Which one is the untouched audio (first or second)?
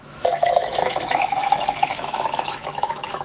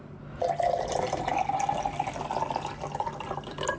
second